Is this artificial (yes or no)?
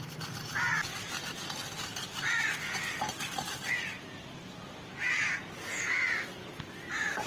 no